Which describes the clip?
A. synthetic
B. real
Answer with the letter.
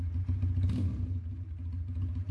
B